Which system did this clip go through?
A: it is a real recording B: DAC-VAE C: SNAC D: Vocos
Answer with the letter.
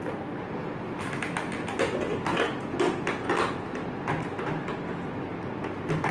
A